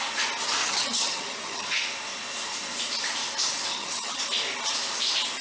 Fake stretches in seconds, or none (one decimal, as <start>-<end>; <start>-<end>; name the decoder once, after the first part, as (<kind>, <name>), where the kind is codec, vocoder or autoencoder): 0.6-1.8 (vocoder, HiFi-GAN); 3.7-4.2